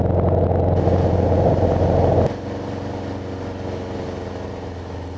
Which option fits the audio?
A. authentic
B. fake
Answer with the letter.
A